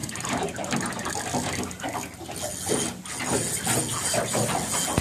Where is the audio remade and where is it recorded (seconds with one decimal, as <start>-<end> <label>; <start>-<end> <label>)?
0.0-5.0 recorded